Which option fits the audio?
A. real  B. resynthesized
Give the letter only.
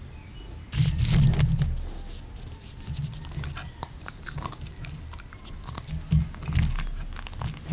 A